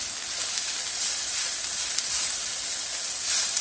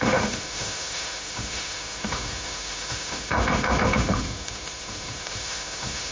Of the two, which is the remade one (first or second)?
second